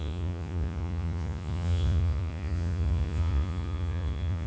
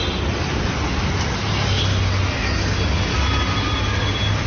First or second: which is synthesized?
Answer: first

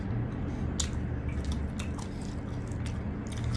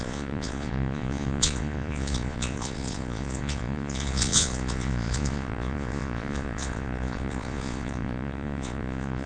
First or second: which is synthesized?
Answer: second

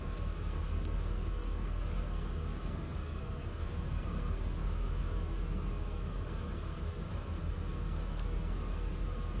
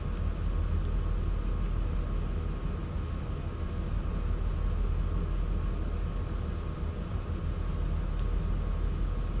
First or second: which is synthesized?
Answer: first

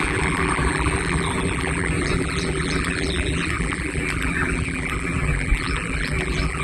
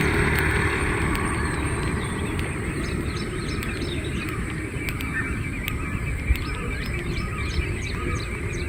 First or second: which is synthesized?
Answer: first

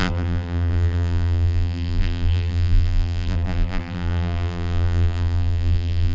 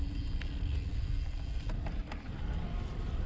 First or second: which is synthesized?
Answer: first